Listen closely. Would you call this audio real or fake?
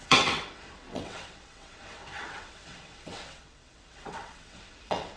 fake